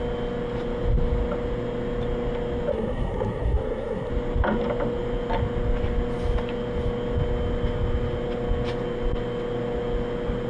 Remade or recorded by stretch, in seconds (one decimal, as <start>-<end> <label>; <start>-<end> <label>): 0.0-2.7 recorded; 2.7-4.1 remade; 4.1-10.5 recorded